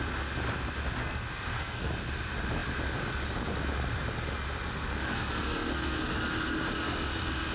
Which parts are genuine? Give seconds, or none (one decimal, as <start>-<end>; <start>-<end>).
0.0-1.0; 1.9-5.1; 6.1-7.5

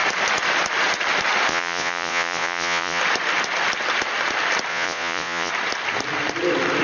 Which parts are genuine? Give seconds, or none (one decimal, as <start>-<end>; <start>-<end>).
0.0-1.5; 3.0-4.7; 5.5-6.8

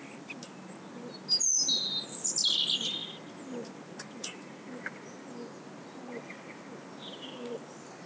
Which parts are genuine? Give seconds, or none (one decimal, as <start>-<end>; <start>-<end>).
0.0-8.1

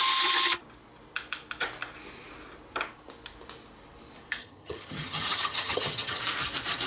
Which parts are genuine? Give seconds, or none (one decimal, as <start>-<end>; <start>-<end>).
0.0-4.4; 6.2-6.9

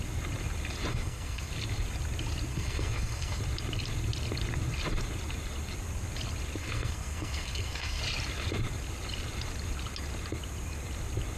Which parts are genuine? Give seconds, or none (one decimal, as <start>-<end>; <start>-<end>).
0.0-0.9; 1.5-2.5; 3.4-6.6; 8.0-11.4

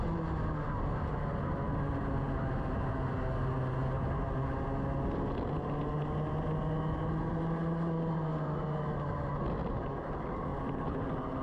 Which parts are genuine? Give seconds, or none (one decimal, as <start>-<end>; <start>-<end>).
0.0-11.4

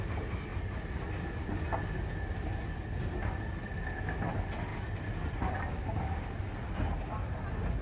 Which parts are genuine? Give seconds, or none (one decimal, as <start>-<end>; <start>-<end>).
0.0-4.7; 6.4-7.8

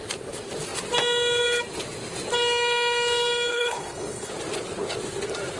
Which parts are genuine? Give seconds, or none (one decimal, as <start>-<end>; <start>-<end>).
0.0-3.5; 4.3-5.6